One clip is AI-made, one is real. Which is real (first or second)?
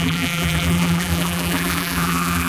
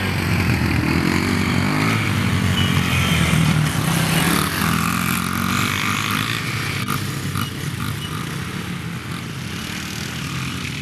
second